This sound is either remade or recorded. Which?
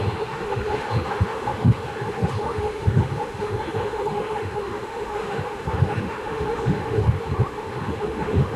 remade